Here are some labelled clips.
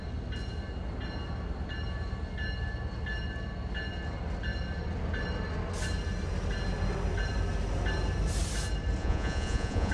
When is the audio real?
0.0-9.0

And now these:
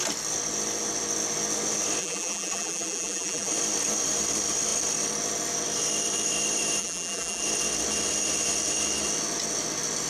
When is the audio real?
0.0-2.0; 3.5-6.8; 7.4-10.1

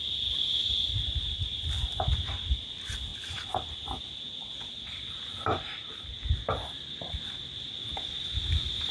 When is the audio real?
0.0-4.4; 5.1-8.9

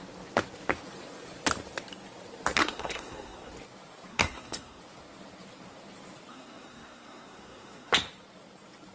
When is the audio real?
0.0-2.6; 3.5-4.1; 4.8-6.3; 7.9-8.9

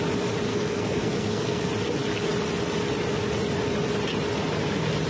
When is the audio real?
0.0-0.5; 1.7-5.1